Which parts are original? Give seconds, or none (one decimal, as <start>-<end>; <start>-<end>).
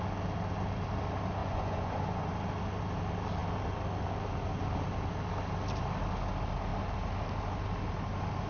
0.0-1.4; 2.3-8.5